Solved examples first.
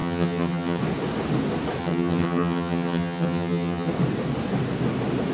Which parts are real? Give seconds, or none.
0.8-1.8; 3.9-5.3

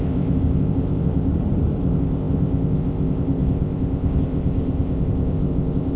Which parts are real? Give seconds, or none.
1.3-1.8